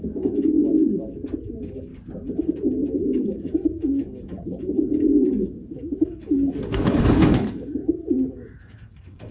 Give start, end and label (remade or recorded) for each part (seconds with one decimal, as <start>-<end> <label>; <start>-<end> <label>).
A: 0.0-1.9 remade; 1.9-2.9 recorded; 2.9-7.8 remade; 7.8-8.3 recorded; 8.3-9.3 remade

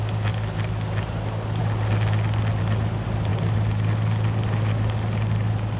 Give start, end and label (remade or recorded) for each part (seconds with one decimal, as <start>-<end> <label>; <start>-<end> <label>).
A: 0.0-5.8 recorded

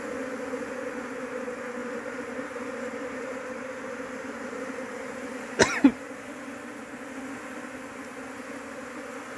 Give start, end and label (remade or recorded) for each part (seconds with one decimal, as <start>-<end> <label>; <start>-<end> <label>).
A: 0.0-1.8 recorded; 1.8-6.3 remade; 6.3-9.4 recorded

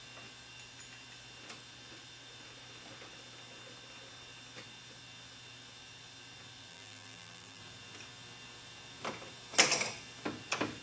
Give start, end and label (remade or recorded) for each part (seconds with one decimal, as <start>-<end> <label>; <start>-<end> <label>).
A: 0.0-6.7 recorded; 6.7-7.6 remade; 7.6-10.8 recorded

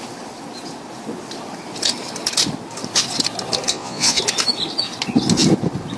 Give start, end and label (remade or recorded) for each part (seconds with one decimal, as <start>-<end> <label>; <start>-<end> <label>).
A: 0.0-3.7 recorded; 3.7-4.2 remade; 4.2-6.0 recorded